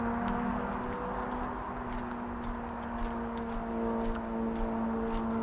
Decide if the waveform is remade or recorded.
recorded